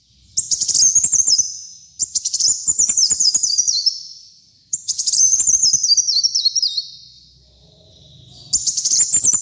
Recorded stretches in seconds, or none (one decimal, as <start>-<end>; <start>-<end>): 0.0-2.0; 5.4-6.3; 7.9-8.6